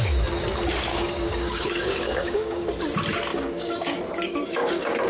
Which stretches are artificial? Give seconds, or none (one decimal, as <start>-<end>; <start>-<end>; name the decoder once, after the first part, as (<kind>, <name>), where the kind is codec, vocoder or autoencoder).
0.9-2.7 (codec, DAC); 3.3-4.0; 4.4-5.1

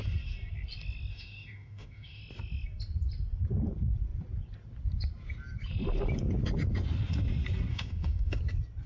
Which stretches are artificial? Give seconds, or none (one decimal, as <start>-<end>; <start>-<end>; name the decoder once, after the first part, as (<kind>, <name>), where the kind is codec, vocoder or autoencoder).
1.1-2.2 (autoencoder, DAC-VAE); 7.7-8.4

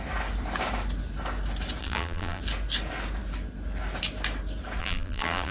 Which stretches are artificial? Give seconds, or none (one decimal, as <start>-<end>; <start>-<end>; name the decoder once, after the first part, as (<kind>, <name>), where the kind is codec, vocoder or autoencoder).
1.8-2.4 (vocoder, BigVGAN v2); 4.8-5.5

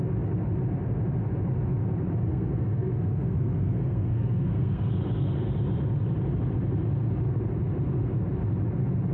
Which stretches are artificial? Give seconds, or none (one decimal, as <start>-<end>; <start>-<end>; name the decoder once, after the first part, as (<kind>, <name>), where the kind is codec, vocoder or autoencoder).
2.2-4.9 (codec, SNAC)

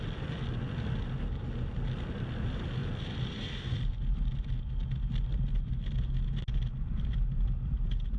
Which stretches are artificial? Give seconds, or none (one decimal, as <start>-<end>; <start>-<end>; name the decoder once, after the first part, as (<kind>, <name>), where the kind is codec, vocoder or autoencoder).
2.8-3.9 (vocoder, BigVGAN v2)

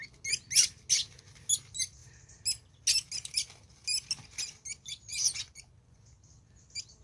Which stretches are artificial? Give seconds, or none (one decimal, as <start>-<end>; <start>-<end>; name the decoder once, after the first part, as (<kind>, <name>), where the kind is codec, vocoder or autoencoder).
5.1-6.2 (vocoder, Vocos)

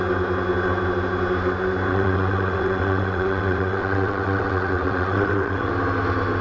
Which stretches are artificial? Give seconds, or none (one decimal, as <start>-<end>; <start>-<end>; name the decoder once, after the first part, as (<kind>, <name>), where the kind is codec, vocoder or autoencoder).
1.9-5.7 (vocoder, WaveNeXt)